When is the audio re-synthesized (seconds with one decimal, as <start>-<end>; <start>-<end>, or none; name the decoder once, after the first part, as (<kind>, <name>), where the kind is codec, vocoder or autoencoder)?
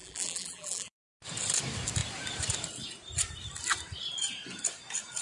0.0-1.0 (vocoder, BigVGAN v2)